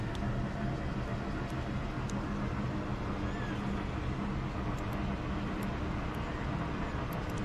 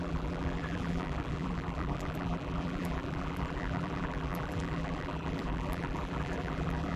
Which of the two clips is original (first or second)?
first